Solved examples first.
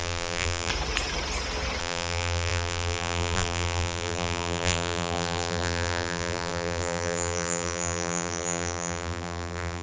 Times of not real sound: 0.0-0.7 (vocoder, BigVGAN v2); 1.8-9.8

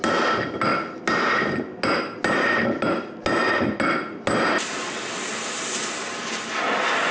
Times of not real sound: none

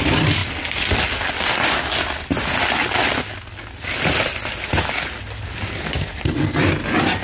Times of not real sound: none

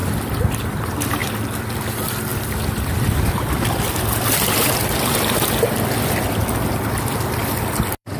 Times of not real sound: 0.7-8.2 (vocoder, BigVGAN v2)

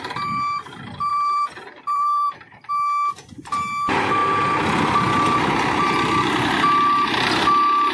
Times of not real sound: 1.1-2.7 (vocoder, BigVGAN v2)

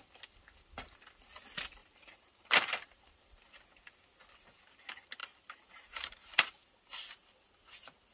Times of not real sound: 1.8-3.6 (vocoder, BigVGAN v2); 5.2-6.5

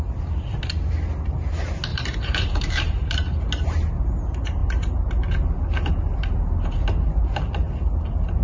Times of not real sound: 1.9-3.4 (vocoder, BigVGAN v2)

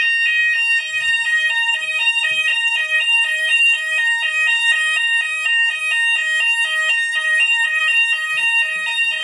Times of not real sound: 2.5-5.8 (vocoder, BigVGAN v2); 7.1-7.8